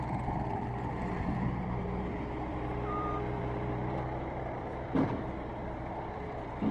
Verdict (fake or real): fake